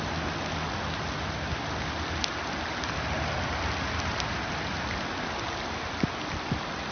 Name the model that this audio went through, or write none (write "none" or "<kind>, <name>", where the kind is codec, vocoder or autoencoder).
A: none